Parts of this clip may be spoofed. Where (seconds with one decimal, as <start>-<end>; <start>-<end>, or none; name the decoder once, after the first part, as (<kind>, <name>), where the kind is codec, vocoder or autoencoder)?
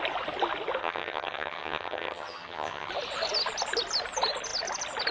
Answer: 0.8-2.9 (vocoder, HiFi-GAN)